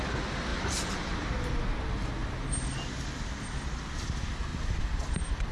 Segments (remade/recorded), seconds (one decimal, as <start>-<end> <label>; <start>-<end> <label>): 0.0-2.2 recorded; 2.2-2.7 remade; 2.7-5.5 recorded